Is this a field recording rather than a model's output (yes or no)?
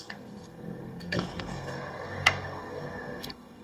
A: no